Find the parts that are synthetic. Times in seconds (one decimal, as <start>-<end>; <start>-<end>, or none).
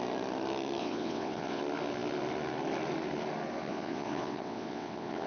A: 0.8-1.6; 3.6-5.3